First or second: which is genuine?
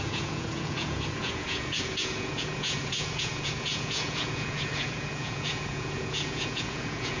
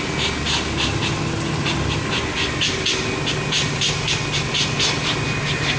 second